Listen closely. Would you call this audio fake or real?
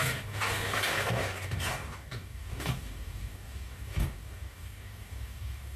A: fake